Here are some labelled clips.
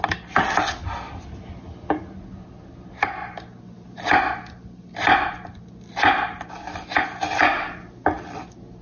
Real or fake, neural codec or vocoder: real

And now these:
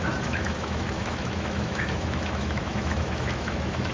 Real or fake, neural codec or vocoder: fake, autoencoder, DAC-VAE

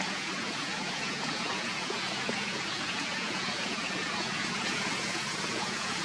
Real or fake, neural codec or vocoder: fake, vocoder, Vocos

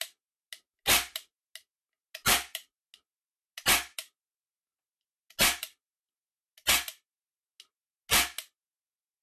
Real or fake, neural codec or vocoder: real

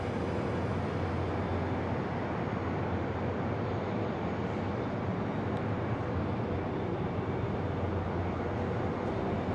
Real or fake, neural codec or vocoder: real